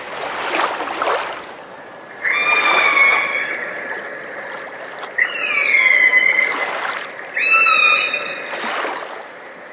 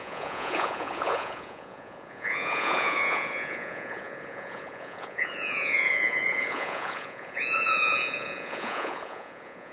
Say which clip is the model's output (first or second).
second